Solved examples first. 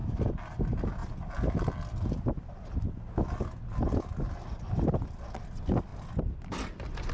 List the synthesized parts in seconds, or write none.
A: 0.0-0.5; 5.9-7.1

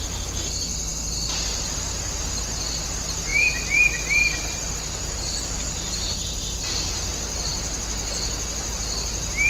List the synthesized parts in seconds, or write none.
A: 3.3-4.4

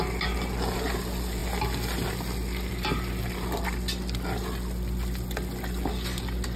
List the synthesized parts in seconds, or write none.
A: none

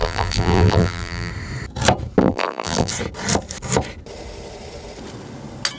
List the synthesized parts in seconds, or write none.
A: 0.0-1.3; 2.2-2.9

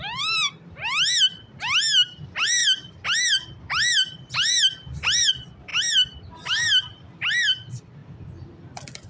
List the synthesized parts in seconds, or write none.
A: 0.0-0.8; 2.1-9.1

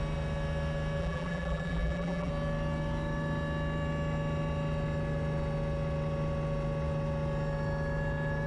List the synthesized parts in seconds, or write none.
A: 1.0-2.3

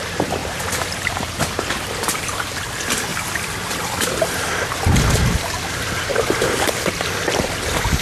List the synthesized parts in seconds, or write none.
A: 0.4-2.4

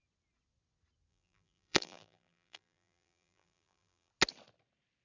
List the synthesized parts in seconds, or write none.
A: 1.1-4.1